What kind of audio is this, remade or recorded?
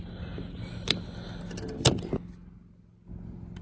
recorded